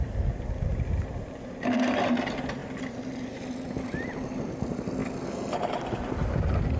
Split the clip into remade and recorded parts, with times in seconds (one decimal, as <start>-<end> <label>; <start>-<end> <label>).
0.0-6.8 recorded